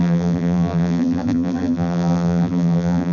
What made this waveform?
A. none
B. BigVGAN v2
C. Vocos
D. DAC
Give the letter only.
B